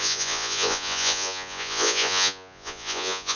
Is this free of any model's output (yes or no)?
no